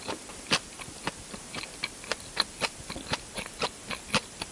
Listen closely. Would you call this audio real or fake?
real